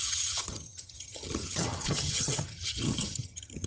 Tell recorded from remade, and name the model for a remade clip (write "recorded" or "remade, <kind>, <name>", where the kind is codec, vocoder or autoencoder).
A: remade, vocoder, HiFi-GAN